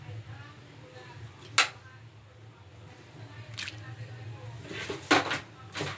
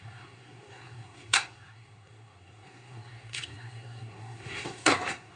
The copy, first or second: second